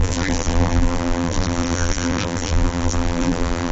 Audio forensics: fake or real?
fake